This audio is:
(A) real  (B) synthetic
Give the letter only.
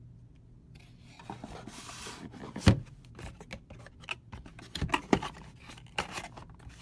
A